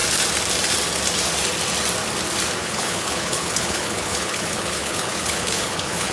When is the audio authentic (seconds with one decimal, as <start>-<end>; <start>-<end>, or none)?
0.0-2.6